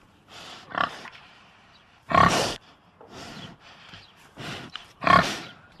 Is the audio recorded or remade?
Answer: remade